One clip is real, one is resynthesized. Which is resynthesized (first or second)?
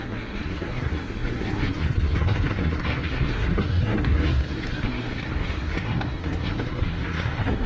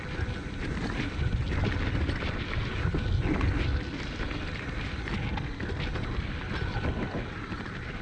first